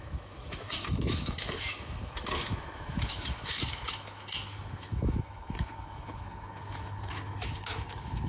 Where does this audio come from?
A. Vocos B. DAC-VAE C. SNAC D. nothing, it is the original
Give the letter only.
B